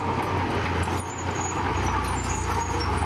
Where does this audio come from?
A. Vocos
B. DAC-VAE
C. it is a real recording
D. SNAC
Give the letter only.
C